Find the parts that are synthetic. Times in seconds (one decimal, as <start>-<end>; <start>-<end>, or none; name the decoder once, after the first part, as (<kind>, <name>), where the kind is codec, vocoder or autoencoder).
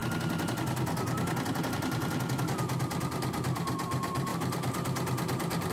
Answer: 1.6-2.0 (vocoder, BigVGAN v2); 3.0-4.3